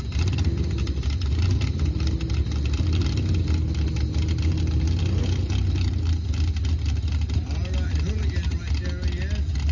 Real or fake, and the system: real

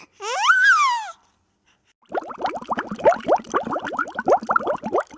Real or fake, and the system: real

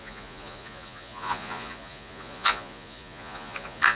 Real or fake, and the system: fake, vocoder, Vocos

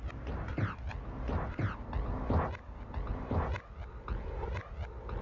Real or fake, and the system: real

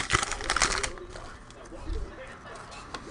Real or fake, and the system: real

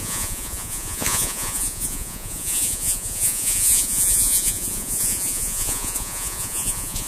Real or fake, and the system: fake, vocoder, Vocos